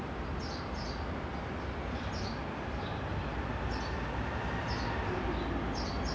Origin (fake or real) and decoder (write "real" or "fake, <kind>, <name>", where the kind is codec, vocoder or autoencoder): real